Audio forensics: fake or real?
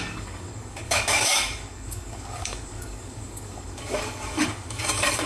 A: fake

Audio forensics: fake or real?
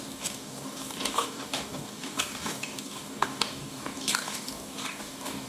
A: fake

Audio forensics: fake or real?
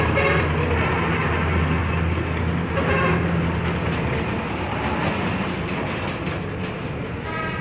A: real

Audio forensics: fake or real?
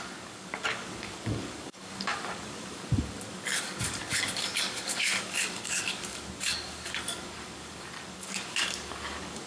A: fake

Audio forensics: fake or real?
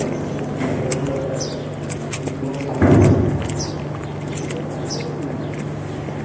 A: real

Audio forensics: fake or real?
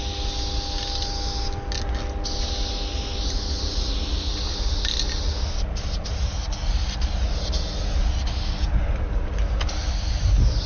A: real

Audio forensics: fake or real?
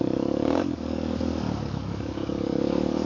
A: fake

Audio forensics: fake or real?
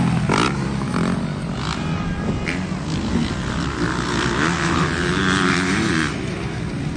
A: real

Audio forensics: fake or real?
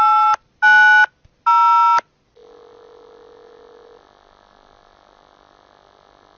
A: real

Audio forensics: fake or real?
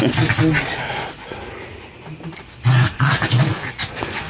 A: real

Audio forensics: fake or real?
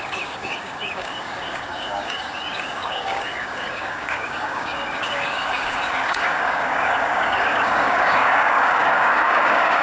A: fake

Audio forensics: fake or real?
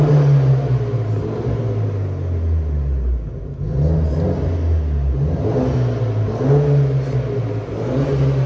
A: real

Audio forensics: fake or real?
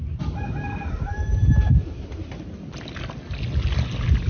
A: real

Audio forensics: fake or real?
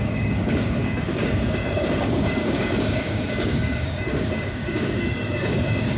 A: fake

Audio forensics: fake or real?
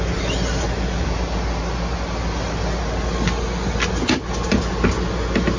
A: real